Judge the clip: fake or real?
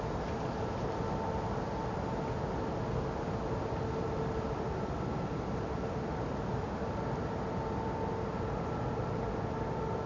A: real